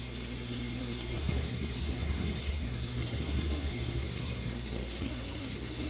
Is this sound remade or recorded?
remade